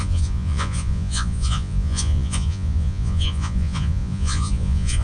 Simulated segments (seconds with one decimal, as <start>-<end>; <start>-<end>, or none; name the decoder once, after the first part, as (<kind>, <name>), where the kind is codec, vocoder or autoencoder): 0.0-5.0 (vocoder, Vocos)